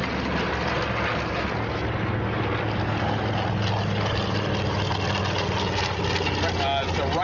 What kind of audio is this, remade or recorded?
recorded